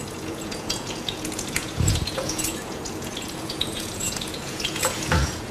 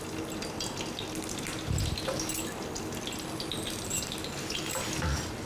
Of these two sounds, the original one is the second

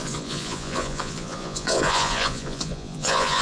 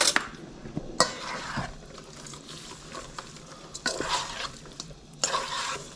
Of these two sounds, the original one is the second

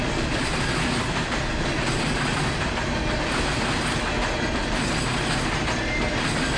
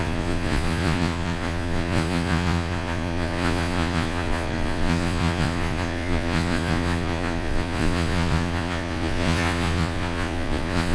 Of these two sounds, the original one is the first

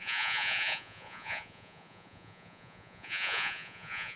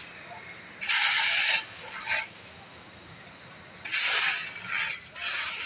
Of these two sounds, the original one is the second